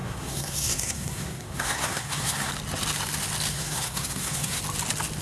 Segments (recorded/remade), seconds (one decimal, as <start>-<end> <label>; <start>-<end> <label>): 0.0-2.5 remade; 2.5-3.5 recorded; 3.5-4.6 remade; 4.6-5.2 recorded